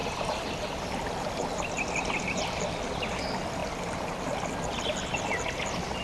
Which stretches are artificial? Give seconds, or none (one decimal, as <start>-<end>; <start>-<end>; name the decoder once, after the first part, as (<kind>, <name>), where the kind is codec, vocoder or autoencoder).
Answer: none